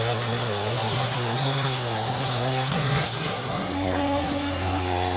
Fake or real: fake